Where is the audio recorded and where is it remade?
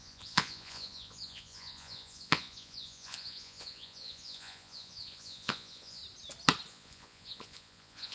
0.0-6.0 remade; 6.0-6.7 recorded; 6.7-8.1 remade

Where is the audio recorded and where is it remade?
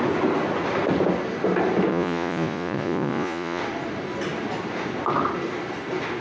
0.0-1.9 recorded; 1.9-3.6 remade; 3.6-6.2 recorded